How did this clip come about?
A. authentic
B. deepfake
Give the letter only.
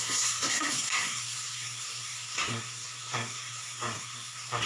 B